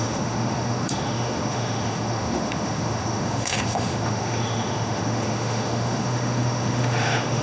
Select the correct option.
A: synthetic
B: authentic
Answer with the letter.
A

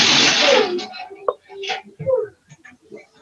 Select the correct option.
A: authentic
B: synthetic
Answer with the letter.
A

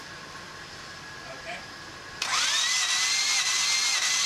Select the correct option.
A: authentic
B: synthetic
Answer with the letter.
A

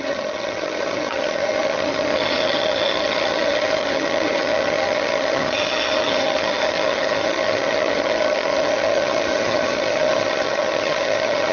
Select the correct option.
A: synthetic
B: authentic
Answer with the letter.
A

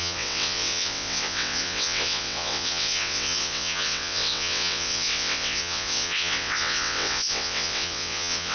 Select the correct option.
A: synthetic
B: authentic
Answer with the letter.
A